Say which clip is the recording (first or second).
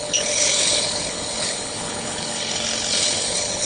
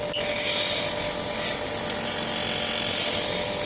second